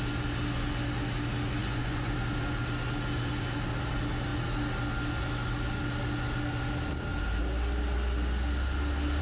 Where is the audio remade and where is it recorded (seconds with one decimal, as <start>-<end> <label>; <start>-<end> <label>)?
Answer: 0.0-1.6 recorded; 1.6-2.1 remade; 2.1-9.2 recorded